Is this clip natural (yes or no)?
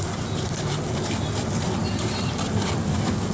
yes